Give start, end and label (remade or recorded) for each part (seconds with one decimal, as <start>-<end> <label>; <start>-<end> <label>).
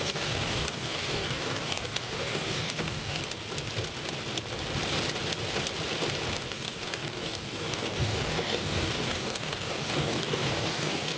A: 0.0-3.2 remade; 3.2-6.5 recorded; 6.5-11.2 remade